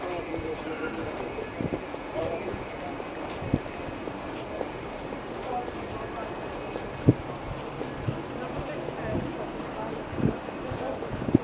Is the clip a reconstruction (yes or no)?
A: no